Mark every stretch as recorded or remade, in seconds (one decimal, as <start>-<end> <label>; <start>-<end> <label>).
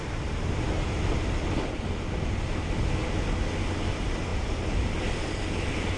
0.0-4.3 recorded; 4.3-6.0 remade